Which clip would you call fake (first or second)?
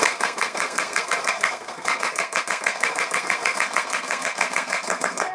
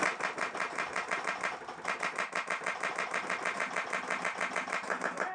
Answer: first